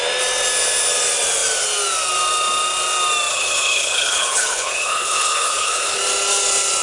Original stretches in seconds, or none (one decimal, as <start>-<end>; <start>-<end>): 0.0-3.3; 6.0-6.8